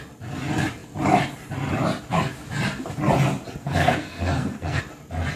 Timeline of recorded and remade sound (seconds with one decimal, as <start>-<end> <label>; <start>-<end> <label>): 0.0-3.6 recorded; 3.6-4.8 remade; 4.8-5.4 recorded